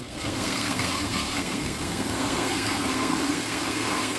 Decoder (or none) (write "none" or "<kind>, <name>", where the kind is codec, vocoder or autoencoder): codec, SNAC